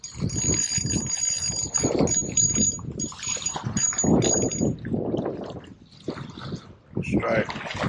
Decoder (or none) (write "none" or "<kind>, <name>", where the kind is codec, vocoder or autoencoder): none